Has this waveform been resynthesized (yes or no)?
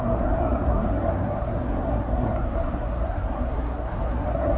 yes